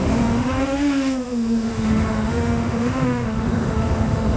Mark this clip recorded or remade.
remade